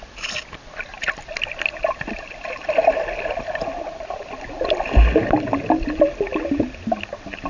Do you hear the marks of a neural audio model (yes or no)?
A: no